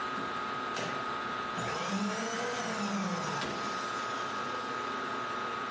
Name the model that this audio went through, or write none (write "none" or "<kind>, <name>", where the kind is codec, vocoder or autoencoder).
none